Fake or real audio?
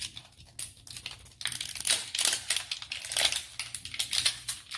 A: real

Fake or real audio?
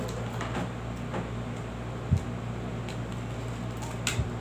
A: real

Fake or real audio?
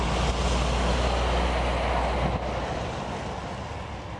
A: real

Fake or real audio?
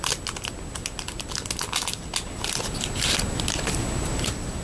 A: real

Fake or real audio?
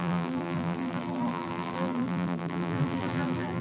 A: fake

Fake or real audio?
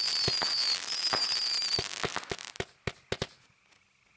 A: real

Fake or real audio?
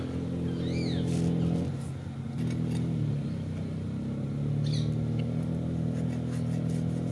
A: real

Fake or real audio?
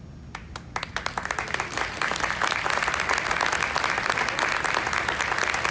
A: real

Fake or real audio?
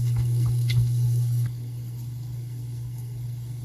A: fake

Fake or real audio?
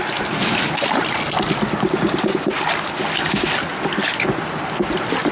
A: real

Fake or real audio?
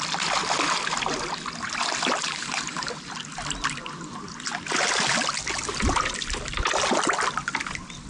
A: real